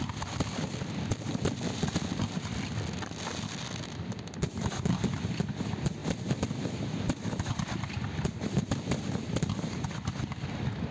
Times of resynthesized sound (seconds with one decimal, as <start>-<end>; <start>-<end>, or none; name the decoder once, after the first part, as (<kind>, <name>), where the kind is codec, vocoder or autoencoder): 0.0-10.9 (vocoder, BigVGAN v2)